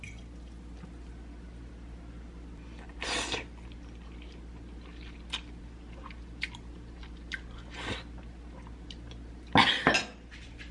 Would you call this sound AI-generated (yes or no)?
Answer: no